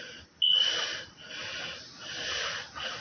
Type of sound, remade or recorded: recorded